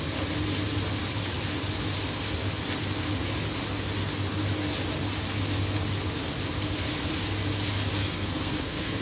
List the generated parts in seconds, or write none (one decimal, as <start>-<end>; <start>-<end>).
8.0-9.0

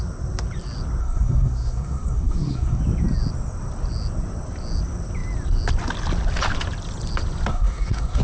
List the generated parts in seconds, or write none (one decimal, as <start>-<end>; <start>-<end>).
1.0-2.8; 7.5-8.2

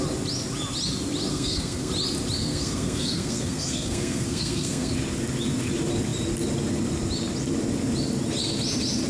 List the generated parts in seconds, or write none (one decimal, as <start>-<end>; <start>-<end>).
1.3-1.9; 2.4-4.9

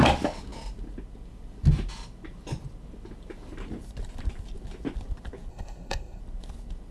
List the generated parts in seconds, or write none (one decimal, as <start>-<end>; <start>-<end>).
5.5-6.2

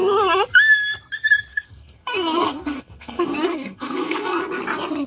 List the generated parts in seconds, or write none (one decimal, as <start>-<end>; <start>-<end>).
1.5-4.6